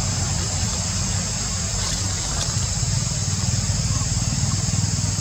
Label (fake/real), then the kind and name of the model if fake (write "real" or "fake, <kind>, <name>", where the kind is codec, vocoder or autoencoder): fake, vocoder, BigVGAN v2